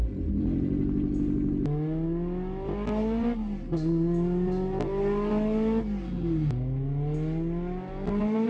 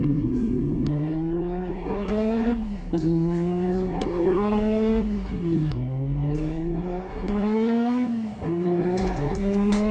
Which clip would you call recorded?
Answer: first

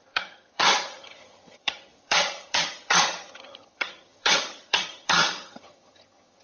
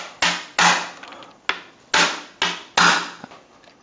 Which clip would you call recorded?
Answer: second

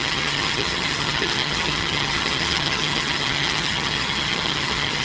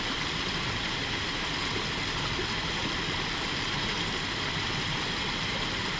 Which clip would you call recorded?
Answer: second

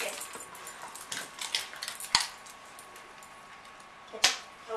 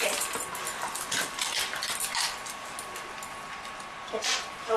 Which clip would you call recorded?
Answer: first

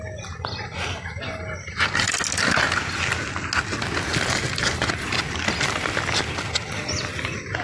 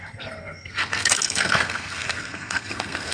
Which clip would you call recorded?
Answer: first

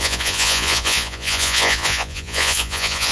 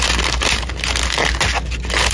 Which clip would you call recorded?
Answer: second